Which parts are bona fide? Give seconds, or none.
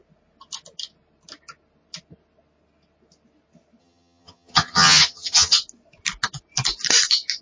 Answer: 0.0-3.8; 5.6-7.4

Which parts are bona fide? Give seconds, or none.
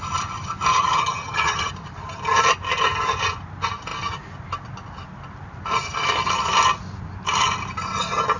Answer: 0.0-0.7; 1.7-8.4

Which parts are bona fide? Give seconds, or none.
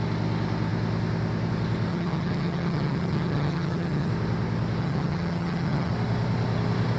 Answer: 0.0-1.9; 4.1-4.8; 5.9-7.0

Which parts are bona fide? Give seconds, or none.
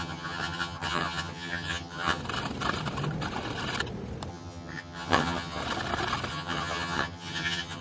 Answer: 2.2-4.3; 5.6-6.3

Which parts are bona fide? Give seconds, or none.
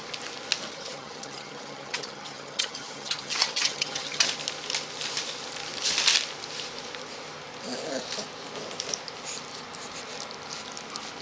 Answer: 0.0-0.7; 4.3-11.2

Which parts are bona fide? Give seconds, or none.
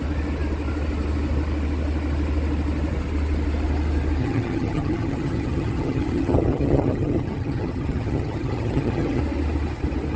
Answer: 0.0-4.2; 9.2-10.2